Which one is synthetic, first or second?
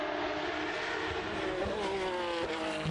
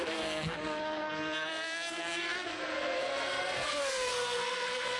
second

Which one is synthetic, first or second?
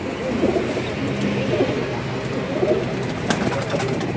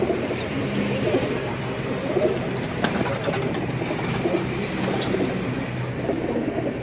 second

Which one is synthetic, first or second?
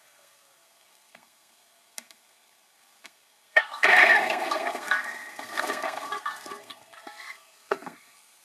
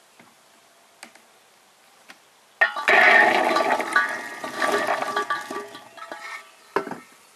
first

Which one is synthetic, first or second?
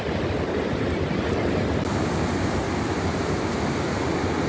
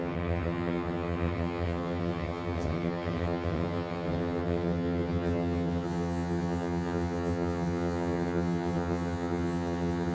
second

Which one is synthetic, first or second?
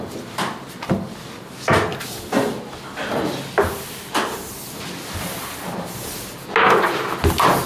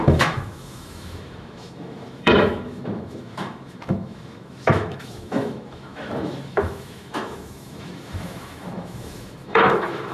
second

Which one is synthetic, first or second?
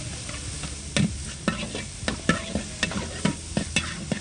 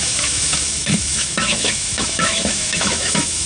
second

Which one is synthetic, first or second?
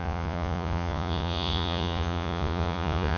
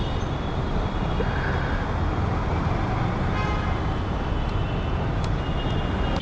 first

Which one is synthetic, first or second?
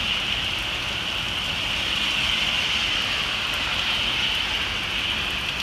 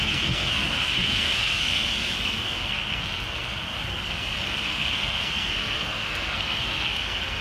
second